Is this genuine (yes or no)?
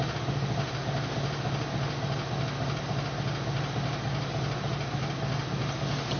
yes